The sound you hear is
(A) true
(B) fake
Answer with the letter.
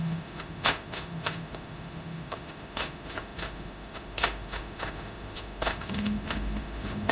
B